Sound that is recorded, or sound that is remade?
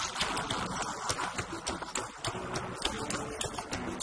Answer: recorded